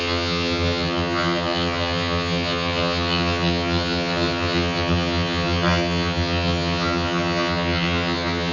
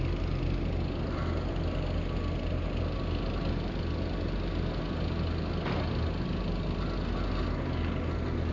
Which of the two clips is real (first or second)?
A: second